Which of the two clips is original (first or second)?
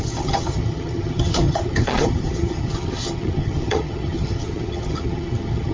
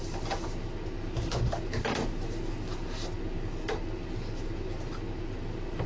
second